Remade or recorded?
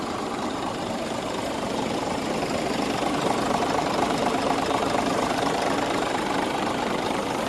remade